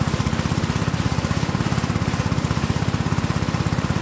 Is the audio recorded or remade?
recorded